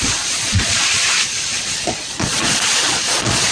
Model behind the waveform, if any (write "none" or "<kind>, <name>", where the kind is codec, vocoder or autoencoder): vocoder, Vocos